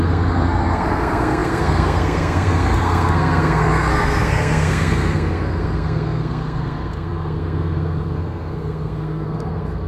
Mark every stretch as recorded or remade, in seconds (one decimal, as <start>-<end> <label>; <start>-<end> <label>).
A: 0.0-9.9 remade